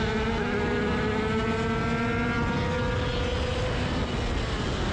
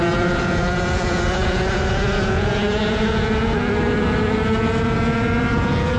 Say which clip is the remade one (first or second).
second